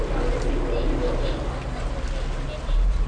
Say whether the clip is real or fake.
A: real